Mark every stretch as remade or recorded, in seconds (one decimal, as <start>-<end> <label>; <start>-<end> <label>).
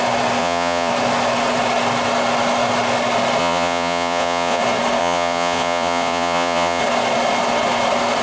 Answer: 0.0-0.4 recorded; 0.4-0.9 remade; 0.9-3.4 recorded; 3.4-4.6 remade; 4.6-5.0 recorded; 5.0-6.8 remade; 6.8-8.2 recorded